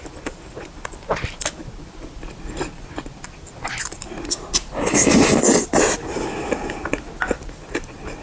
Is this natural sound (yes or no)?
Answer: yes